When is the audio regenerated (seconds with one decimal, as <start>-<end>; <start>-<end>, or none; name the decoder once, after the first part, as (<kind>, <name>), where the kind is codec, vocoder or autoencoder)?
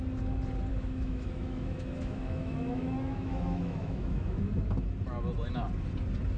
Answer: 0.7-4.5 (autoencoder, DAC-VAE)